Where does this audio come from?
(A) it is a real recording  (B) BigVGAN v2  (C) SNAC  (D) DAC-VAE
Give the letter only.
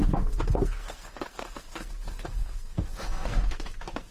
C